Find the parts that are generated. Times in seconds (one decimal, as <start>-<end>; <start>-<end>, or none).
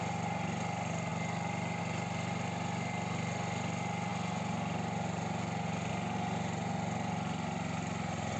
none